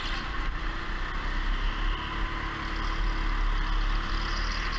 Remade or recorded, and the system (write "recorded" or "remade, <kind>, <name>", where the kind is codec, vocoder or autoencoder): recorded